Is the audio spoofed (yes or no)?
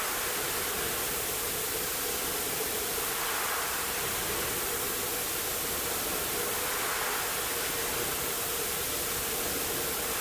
no